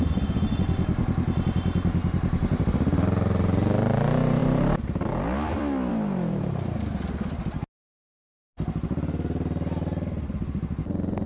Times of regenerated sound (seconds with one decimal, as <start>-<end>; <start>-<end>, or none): 4.4-5.9